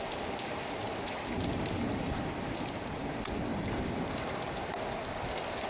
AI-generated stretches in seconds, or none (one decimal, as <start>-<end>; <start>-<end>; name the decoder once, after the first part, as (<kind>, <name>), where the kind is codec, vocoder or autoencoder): 0.9-2.2 (vocoder, BigVGAN v2); 3.5-4.7